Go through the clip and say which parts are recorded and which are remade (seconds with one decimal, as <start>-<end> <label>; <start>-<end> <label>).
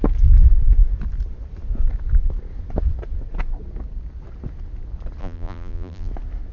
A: 0.0-5.2 recorded; 5.2-6.1 remade; 6.1-6.5 recorded